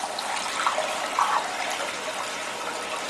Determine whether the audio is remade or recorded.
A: recorded